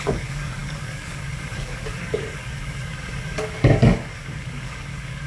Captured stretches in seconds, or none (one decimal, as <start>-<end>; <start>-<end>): none